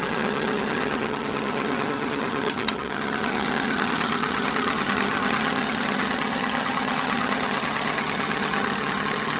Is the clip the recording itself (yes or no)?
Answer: no